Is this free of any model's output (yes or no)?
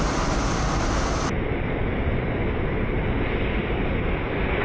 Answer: yes